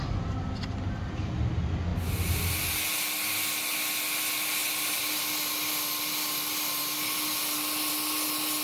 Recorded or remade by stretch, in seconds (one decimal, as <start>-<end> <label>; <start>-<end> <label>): 0.0-8.6 recorded